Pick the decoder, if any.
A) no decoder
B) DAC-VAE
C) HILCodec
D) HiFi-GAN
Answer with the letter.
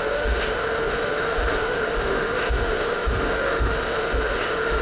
B